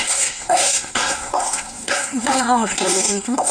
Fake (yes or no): yes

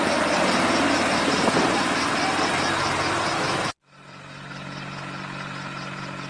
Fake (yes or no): no